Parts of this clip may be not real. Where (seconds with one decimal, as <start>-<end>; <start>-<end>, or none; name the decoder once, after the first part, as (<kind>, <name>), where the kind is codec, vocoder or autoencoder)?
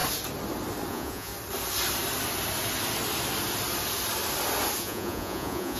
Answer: 0.9-1.3 (vocoder, Vocos); 4.8-5.8